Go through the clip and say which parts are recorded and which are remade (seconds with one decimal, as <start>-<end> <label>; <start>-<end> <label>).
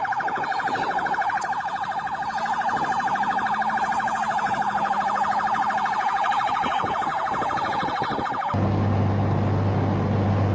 0.0-10.5 recorded